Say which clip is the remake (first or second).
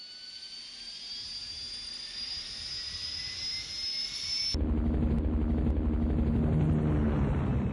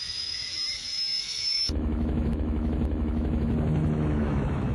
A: second